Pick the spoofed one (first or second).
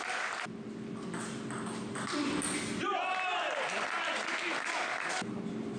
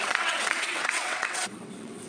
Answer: second